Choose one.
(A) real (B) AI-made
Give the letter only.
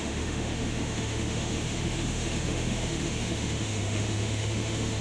B